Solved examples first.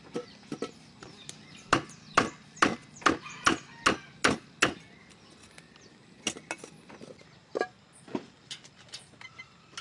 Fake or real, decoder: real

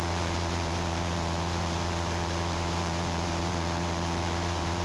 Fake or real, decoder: fake, vocoder, BigVGAN v2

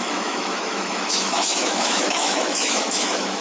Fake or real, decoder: fake, autoencoder, DAC-VAE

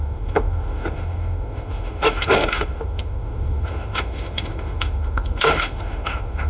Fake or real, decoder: fake, autoencoder, DAC-VAE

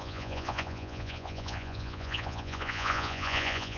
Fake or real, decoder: fake, vocoder, Vocos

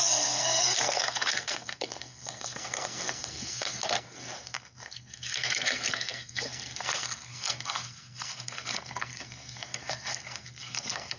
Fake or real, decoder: fake, codec, SNAC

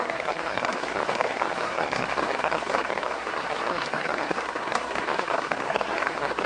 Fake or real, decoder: fake, codec, SNAC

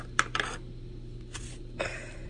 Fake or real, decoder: real